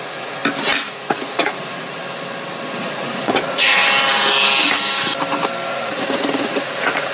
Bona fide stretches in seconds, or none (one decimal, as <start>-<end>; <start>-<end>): 0.4-0.9; 2.0-2.8; 3.8-5.7